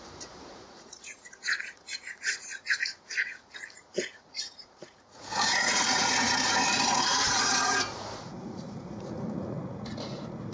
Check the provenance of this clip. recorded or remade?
remade